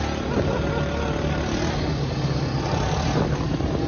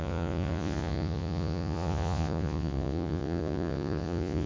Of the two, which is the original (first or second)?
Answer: first